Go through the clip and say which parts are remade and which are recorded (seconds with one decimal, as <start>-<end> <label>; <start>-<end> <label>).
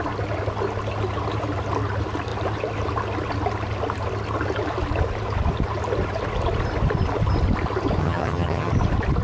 0.0-8.0 recorded; 8.0-8.7 remade; 8.7-9.2 recorded